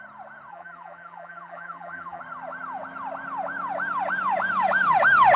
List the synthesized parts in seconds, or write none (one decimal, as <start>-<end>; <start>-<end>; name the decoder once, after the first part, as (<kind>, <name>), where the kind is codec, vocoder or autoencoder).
0.5-2.2 (vocoder, BigVGAN v2)